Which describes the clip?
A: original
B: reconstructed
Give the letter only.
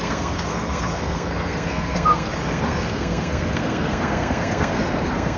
B